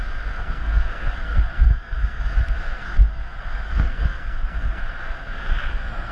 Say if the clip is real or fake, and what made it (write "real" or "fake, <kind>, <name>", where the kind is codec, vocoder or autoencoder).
fake, codec, SNAC